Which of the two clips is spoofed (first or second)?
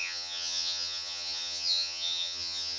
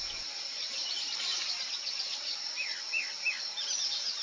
first